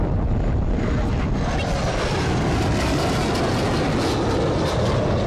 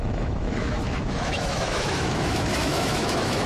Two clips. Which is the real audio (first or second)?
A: first